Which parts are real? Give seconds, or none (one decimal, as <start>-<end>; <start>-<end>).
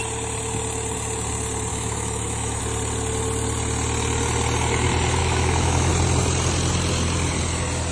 0.0-1.7; 2.6-5.2; 5.9-7.9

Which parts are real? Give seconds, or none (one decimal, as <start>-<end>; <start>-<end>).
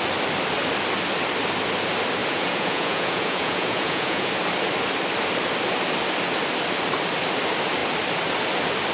0.0-2.2; 4.3-8.9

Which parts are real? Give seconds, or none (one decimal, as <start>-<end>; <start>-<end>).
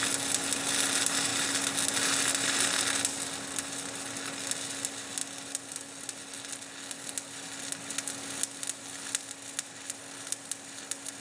0.0-11.2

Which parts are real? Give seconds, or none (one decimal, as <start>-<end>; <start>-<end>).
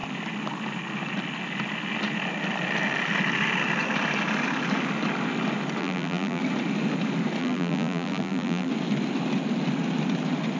0.0-5.8; 6.4-7.4; 8.7-10.6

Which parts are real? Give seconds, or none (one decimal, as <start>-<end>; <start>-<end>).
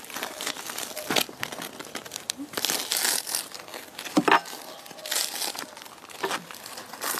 0.0-7.2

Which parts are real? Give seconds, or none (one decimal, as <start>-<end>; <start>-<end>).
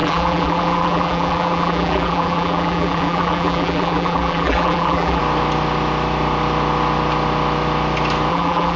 5.2-8.3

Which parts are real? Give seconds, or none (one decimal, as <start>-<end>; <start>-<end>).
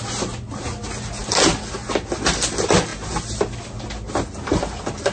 0.0-5.1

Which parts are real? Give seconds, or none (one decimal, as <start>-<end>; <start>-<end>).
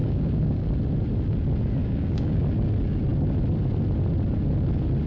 0.7-1.8; 2.4-5.1